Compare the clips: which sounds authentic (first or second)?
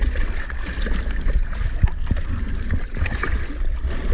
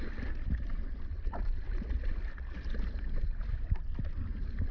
first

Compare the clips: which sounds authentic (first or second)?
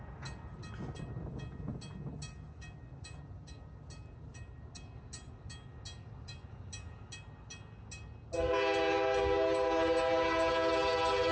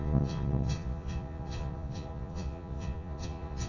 first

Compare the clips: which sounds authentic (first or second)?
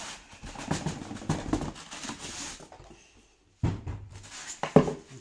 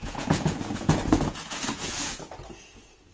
first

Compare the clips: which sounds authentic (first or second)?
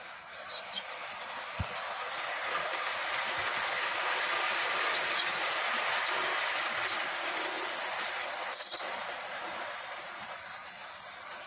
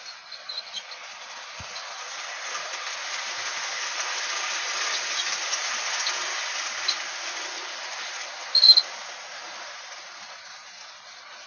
second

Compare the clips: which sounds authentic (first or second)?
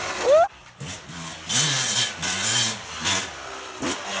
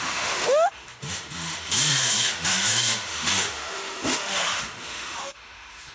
first